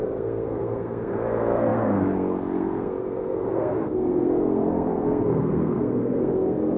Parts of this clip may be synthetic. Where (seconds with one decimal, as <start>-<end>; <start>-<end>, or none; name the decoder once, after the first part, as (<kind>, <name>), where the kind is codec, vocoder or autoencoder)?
0.0-6.8 (codec, SNAC)

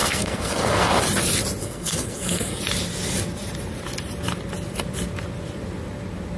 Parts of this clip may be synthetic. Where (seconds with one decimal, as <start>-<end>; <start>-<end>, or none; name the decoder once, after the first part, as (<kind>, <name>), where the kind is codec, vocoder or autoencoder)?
0.0-1.0 (codec, SNAC); 1.6-2.6